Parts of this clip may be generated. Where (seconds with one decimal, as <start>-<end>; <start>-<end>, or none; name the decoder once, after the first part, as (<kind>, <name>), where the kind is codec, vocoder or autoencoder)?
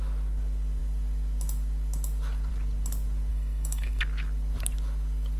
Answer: 3.3-4.0 (codec, SNAC)